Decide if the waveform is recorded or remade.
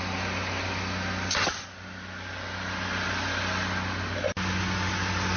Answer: recorded